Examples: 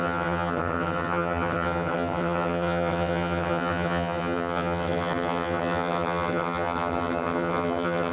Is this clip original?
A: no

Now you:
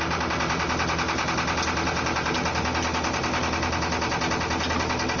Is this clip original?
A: yes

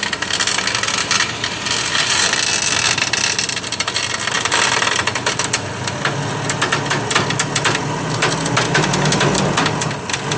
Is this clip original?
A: yes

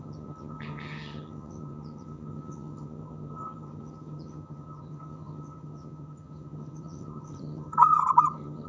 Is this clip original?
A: no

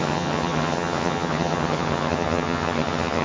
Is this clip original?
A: no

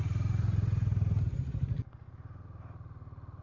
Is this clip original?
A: yes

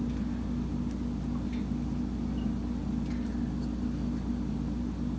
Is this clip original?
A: yes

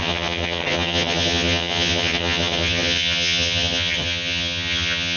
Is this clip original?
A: no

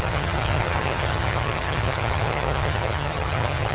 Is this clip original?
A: no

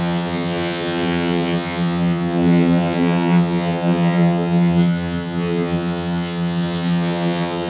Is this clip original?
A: no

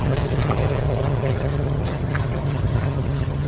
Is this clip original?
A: no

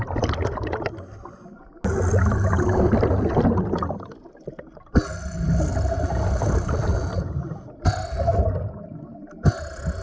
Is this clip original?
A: yes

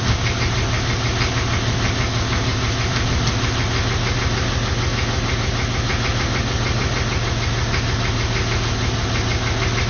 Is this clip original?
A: yes